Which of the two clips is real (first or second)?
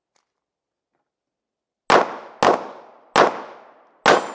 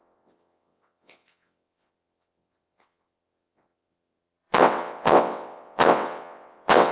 first